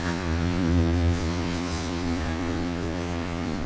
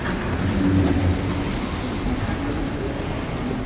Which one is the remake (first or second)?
first